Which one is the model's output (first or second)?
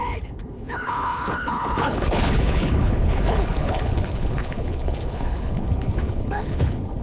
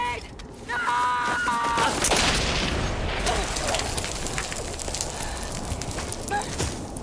first